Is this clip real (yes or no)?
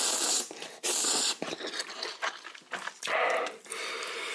yes